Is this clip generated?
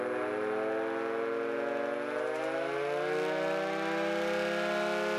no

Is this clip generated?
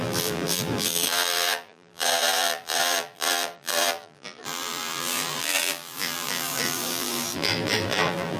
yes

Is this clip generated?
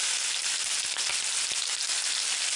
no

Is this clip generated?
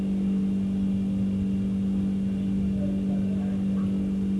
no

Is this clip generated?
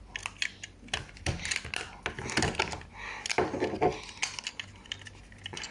no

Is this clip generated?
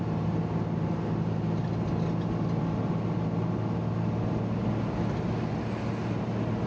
no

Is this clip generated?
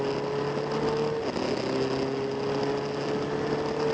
no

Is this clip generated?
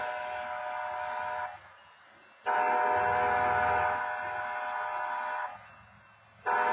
no